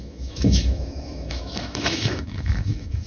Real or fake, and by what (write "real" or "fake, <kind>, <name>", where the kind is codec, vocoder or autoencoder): fake, autoencoder, DAC-VAE